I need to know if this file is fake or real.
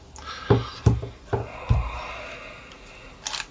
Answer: real